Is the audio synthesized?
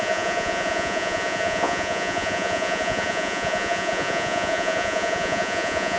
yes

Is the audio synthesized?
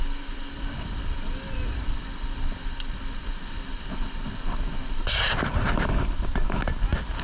no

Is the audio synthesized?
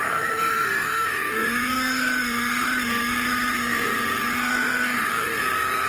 yes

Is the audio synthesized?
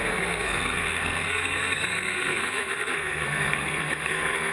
yes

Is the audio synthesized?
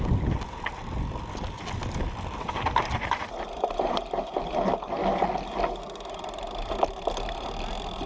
no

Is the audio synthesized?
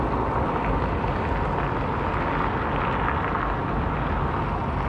no